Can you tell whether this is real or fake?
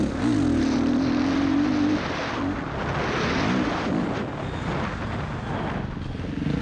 real